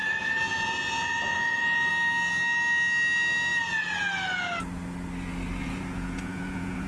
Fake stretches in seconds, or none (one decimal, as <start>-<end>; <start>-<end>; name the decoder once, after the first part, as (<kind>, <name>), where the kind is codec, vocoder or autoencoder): 0.0-1.9 (vocoder, Vocos); 5.6-6.9